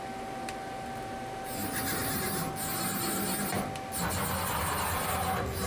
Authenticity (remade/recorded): recorded